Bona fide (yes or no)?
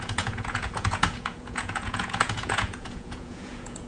no